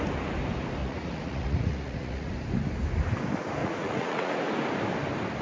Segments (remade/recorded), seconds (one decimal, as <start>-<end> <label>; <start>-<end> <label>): 0.0-0.8 recorded; 0.8-2.3 remade; 2.3-3.6 recorded; 3.6-4.3 remade; 4.3-5.4 recorded